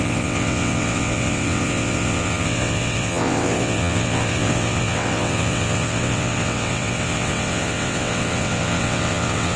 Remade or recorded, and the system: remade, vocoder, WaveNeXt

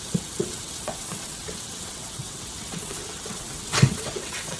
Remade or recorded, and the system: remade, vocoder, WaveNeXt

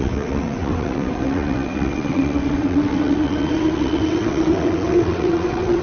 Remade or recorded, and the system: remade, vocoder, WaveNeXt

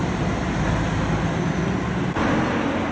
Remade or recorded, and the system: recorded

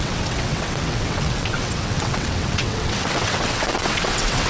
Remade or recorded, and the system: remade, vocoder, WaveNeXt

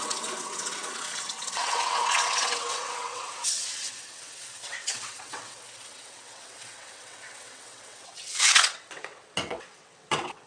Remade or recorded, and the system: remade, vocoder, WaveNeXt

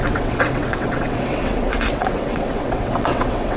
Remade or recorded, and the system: remade, vocoder, WaveNeXt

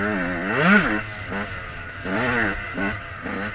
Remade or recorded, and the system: recorded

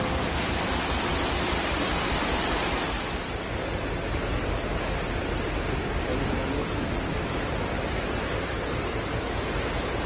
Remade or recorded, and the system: recorded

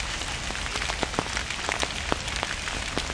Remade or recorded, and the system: recorded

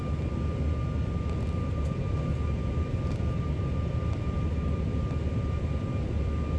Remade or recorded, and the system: recorded